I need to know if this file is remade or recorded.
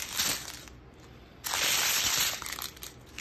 recorded